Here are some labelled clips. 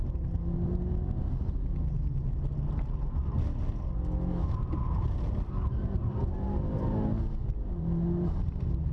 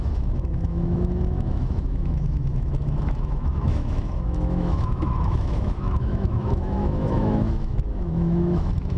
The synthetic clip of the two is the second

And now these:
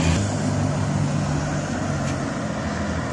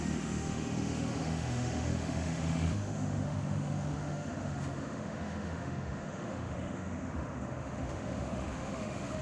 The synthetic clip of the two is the second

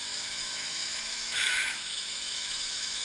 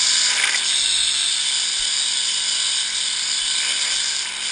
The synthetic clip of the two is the first